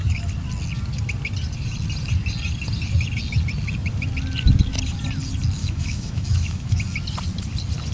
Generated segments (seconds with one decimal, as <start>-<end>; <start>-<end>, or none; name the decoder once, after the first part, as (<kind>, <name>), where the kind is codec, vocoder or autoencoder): 5.6-6.8 (autoencoder, DAC-VAE)